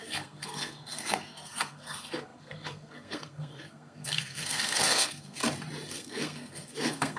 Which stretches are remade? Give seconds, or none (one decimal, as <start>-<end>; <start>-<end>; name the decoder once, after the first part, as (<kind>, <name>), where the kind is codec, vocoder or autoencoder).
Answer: 0.0-5.4 (codec, SNAC); 5.9-7.2